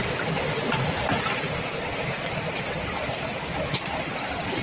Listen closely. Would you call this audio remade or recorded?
recorded